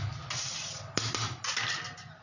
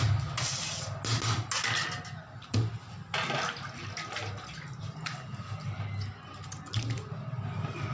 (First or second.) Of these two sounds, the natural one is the second